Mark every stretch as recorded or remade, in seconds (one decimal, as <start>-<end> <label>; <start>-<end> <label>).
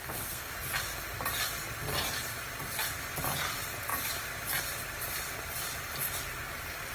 0.0-0.5 remade; 0.5-6.9 recorded